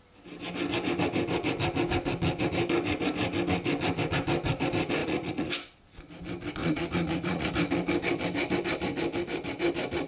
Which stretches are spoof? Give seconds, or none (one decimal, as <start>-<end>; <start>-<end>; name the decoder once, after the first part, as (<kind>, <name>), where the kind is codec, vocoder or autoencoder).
5.0-5.5 (vocoder, Vocos); 6.6-7.5